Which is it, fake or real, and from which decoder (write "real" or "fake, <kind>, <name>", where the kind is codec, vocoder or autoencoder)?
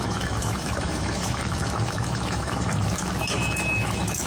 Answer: fake, autoencoder, DAC-VAE